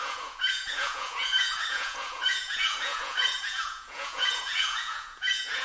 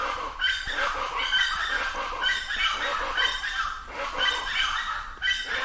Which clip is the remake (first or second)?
first